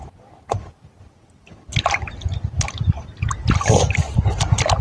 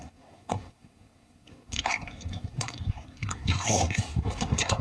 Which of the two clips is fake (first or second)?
second